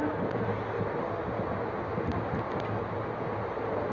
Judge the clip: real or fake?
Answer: real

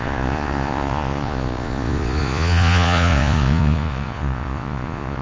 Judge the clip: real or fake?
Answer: fake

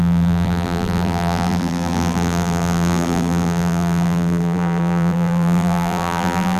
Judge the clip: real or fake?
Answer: fake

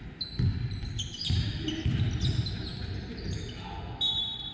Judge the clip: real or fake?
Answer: real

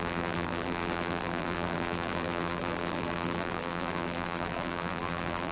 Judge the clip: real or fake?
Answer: fake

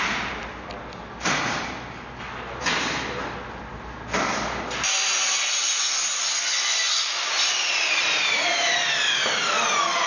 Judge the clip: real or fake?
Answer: real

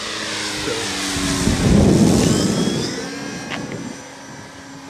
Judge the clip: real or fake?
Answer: real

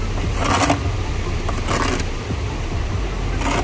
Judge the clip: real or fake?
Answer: real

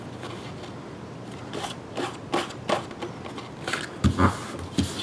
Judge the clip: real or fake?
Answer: real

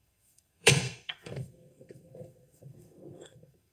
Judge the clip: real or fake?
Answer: fake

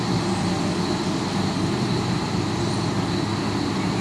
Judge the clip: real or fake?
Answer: real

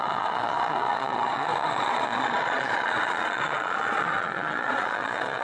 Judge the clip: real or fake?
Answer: fake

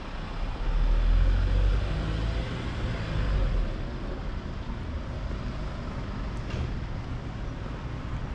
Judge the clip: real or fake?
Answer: real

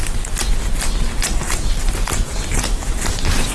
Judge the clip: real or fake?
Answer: real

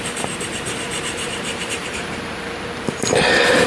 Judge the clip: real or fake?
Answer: fake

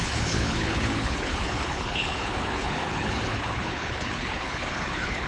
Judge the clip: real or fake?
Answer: fake